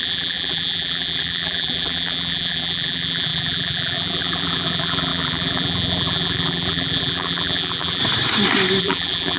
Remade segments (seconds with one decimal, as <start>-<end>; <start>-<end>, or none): 0.0-8.0; 8.8-9.4